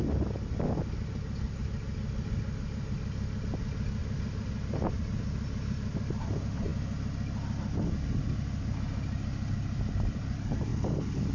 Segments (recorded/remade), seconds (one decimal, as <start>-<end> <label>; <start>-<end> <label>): 0.0-11.3 recorded